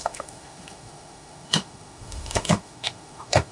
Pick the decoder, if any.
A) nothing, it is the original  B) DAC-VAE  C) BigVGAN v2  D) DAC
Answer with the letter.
B